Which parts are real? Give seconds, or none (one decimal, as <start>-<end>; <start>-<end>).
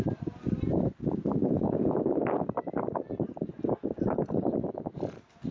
0.0-1.4; 2.0-5.5